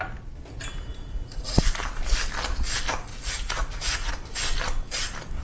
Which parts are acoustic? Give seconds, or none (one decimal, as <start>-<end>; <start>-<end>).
0.0-0.9; 1.6-3.1; 4.1-5.4